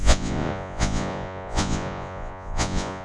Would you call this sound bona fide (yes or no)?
no